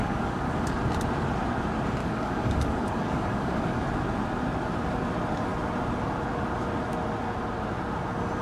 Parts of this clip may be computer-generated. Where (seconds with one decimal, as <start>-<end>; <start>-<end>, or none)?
0.0-0.8; 2.0-3.8